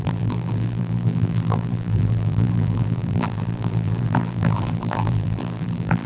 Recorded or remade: remade